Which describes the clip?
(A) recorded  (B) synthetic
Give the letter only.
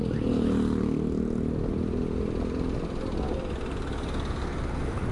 A